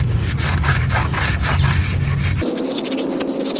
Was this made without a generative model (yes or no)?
yes